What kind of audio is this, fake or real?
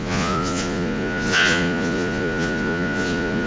fake